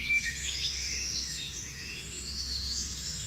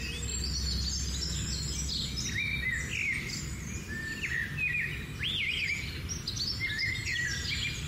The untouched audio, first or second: second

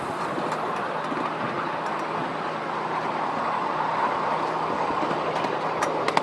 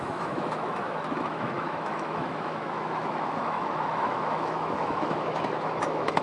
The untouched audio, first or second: first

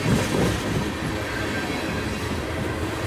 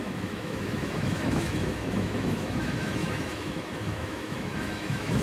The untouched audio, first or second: first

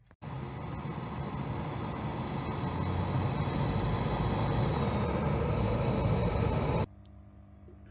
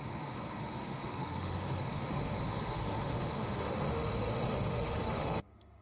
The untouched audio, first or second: first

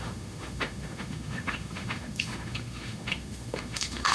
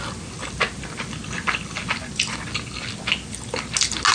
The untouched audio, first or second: second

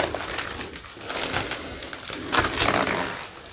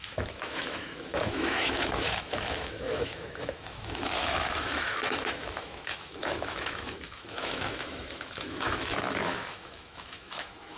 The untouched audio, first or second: first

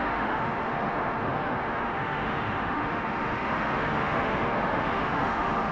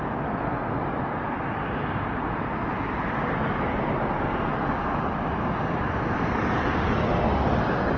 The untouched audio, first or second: second